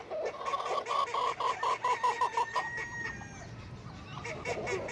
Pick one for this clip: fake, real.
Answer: real